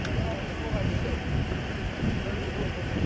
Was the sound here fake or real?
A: real